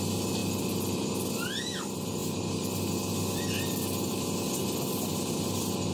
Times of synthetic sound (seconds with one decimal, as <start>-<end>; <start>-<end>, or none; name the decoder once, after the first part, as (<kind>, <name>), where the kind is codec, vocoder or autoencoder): 0.0-0.4 (vocoder, BigVGAN v2); 1.3-2.2

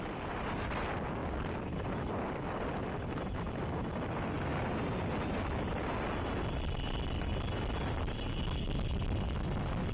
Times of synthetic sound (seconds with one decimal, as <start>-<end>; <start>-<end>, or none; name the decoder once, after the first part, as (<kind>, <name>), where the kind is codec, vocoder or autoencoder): none

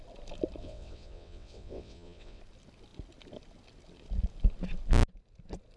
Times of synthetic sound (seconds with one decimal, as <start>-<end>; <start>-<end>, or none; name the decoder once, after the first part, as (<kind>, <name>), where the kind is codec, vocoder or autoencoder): 0.6-2.4 (vocoder, WaveNeXt)

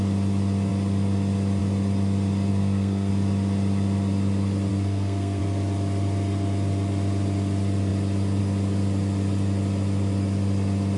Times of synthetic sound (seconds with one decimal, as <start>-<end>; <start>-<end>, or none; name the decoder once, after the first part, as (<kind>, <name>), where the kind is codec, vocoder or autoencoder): 2.5-3.1 (codec, SNAC); 4.7-5.4

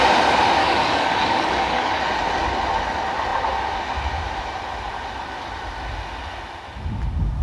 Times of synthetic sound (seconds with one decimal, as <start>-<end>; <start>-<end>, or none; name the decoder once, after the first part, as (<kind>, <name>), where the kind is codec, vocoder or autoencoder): 0.6-2.0 (codec, DAC)

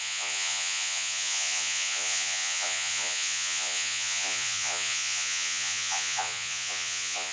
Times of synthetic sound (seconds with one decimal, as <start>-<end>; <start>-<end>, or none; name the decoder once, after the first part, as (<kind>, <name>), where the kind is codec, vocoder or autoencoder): 0.0-7.3 (vocoder, Vocos)